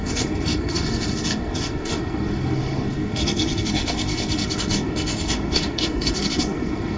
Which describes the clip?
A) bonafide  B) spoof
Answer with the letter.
B